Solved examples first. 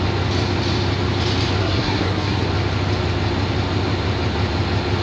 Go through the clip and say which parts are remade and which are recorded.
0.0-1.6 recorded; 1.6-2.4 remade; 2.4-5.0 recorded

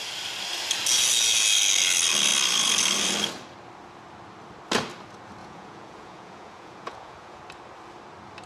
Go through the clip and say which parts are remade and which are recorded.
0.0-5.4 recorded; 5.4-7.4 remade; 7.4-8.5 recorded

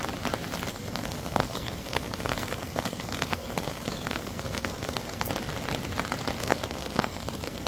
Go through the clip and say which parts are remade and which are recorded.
0.0-0.7 recorded; 0.7-5.3 remade; 5.3-6.4 recorded; 6.4-7.7 remade

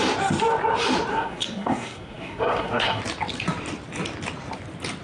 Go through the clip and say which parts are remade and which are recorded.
0.0-1.1 recorded; 1.1-3.0 remade; 3.0-5.0 recorded